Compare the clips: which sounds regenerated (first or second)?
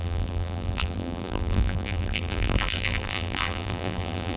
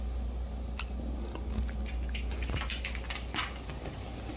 first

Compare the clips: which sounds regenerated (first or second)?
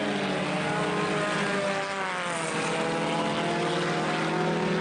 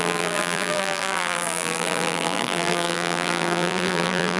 second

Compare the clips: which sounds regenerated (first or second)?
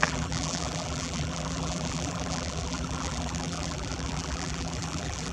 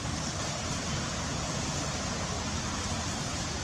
first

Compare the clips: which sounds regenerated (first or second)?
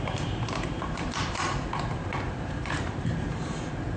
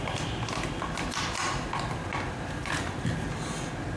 first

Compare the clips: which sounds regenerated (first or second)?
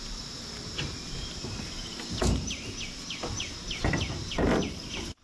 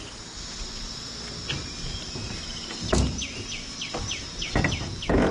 first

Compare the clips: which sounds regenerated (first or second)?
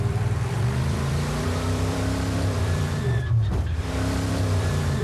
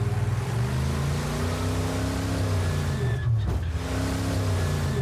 first